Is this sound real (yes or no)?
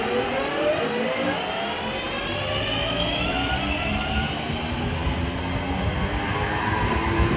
yes